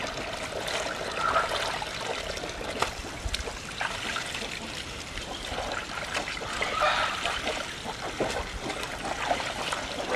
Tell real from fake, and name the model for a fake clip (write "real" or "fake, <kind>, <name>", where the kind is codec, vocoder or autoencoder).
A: real